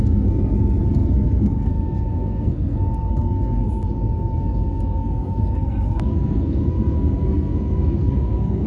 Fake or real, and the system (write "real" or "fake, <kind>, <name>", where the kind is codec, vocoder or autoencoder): fake, codec, SNAC